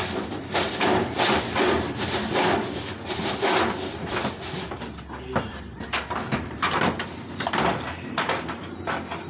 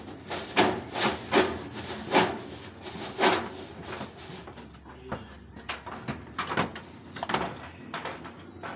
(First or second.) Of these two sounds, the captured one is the second